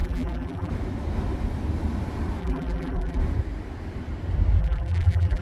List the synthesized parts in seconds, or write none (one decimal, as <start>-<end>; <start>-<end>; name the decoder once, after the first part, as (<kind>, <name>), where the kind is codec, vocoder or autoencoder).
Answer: 0.0-0.7 (vocoder, BigVGAN v2); 2.4-3.2; 4.6-5.4